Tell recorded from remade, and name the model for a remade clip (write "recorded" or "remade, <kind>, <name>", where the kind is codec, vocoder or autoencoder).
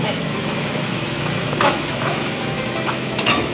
remade, autoencoder, DAC-VAE